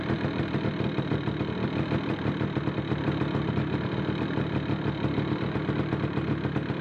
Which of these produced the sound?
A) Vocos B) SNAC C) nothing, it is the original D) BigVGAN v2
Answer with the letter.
D